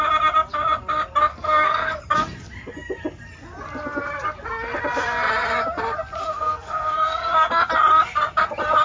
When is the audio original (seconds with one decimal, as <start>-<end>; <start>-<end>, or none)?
0.0-1.3; 2.0-6.2; 7.5-8.8